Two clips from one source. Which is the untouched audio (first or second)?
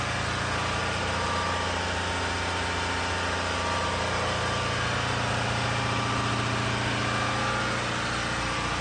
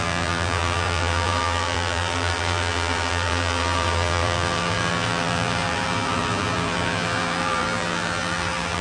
first